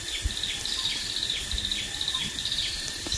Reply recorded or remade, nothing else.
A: recorded